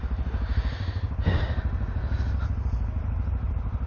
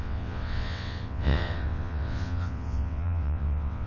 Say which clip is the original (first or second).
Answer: first